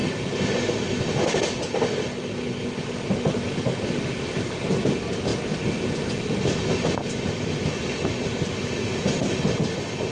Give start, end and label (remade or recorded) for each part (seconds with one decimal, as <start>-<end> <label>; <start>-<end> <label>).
0.0-5.3 recorded; 5.3-8.1 remade; 8.1-10.1 recorded